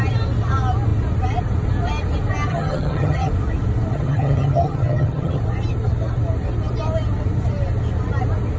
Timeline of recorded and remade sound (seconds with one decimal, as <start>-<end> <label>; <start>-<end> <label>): 0.0-2.5 recorded; 2.5-3.3 remade; 3.3-3.9 recorded; 3.9-5.4 remade; 5.4-8.6 recorded